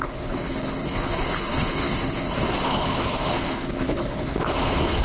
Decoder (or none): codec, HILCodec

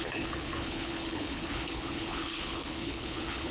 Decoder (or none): codec, HILCodec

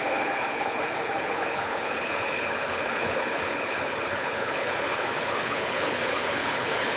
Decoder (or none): codec, HILCodec